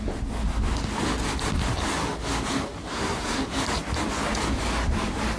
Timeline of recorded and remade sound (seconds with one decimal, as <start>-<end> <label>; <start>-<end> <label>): 0.0-2.9 recorded; 2.9-3.4 remade; 3.4-5.4 recorded